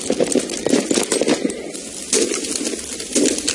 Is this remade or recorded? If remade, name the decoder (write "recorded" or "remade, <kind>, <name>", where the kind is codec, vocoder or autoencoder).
recorded